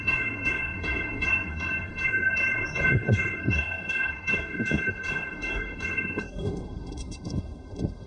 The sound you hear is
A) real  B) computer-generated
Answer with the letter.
B